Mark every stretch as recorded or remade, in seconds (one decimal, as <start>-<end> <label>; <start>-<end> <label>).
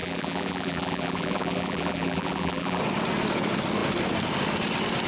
0.0-2.8 remade; 2.8-5.1 recorded